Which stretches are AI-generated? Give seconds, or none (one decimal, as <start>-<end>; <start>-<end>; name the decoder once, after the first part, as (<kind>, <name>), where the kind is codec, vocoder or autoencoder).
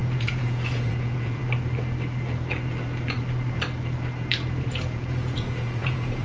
0.0-1.4 (vocoder, Vocos); 4.6-6.2